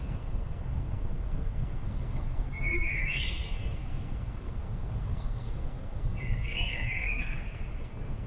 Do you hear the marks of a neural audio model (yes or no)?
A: yes